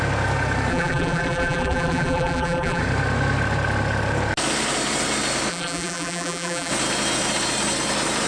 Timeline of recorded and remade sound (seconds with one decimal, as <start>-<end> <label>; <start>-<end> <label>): 0.0-0.7 recorded; 0.7-2.8 remade; 2.8-5.5 recorded; 5.5-6.7 remade; 6.7-8.3 recorded